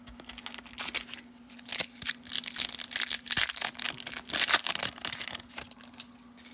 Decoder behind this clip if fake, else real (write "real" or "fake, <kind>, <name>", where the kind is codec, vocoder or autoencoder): real